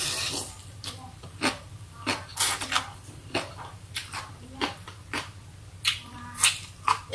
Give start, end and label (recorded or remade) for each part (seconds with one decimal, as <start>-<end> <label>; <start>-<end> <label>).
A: 0.0-2.3 remade; 2.3-2.9 recorded; 2.9-4.0 remade; 4.0-7.1 recorded